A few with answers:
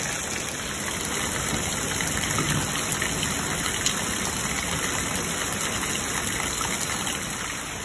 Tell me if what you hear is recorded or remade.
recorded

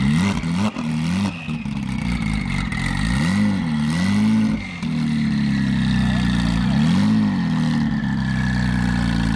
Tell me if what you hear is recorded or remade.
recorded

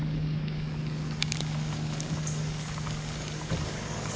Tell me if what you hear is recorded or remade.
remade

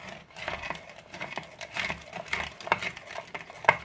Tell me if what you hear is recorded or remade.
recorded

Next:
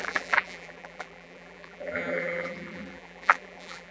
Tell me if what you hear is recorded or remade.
remade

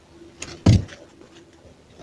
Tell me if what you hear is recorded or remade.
recorded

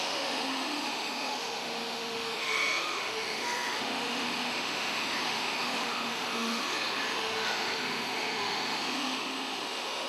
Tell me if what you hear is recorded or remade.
remade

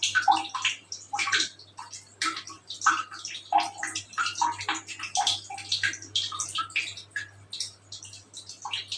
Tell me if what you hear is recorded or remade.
recorded